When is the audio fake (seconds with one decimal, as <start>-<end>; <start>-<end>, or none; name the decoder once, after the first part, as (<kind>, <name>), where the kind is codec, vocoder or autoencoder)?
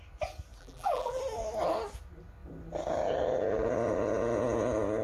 0.6-1.2 (vocoder, BigVGAN v2)